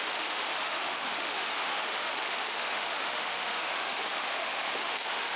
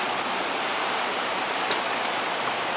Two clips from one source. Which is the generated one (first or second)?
first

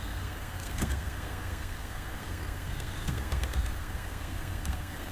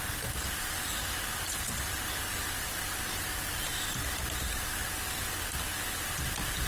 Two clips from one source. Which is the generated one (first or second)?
first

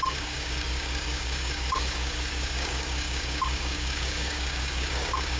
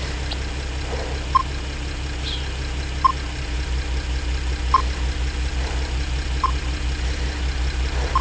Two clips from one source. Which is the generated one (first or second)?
first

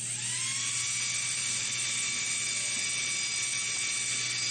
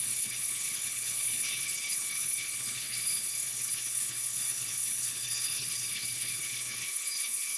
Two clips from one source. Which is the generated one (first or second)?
second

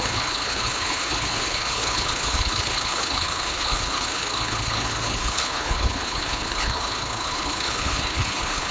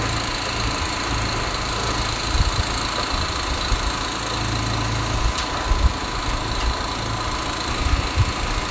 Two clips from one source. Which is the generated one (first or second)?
first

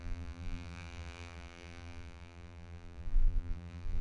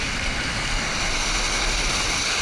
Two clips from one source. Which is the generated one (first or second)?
first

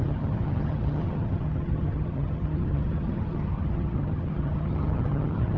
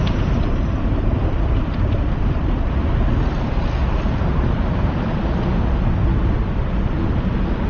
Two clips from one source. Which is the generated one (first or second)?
first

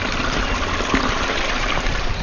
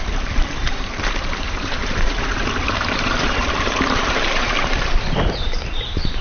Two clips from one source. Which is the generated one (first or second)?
second